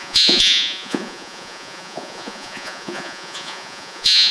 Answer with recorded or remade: remade